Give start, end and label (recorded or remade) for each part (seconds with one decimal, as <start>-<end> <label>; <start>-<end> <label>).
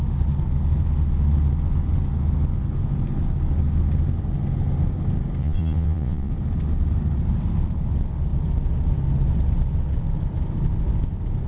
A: 0.0-5.4 recorded; 5.4-6.3 remade; 6.3-11.5 recorded